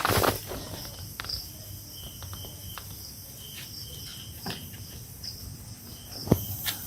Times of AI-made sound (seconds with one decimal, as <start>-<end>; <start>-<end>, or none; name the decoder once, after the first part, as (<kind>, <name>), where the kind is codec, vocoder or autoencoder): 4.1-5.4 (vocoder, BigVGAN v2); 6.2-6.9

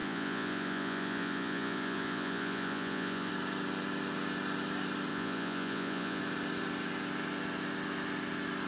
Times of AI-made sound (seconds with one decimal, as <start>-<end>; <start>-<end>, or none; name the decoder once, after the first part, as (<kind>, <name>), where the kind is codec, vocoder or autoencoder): 0.0-3.3 (vocoder, Vocos); 5.1-6.2

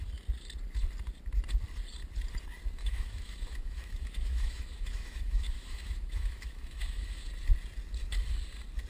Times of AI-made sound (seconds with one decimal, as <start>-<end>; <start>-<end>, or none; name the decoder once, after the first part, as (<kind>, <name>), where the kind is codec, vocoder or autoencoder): 2.8-7.3 (autoencoder, DAC-VAE)

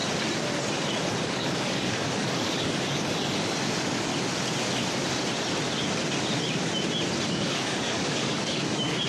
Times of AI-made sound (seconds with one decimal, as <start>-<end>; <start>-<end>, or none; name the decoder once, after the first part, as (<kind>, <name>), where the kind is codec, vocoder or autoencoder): 1.2-4.1 (codec, DAC); 7.3-9.1